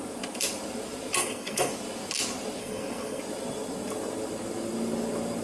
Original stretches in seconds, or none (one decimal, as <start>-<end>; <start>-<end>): 0.0-1.2; 1.7-2.6; 3.2-5.4